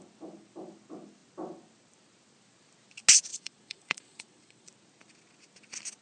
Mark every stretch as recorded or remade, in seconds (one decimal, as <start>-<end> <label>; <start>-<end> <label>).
0.0-3.3 recorded; 3.3-4.7 remade; 4.7-6.0 recorded